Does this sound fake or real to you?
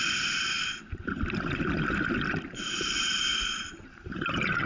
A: real